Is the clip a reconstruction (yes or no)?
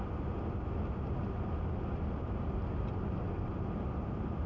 no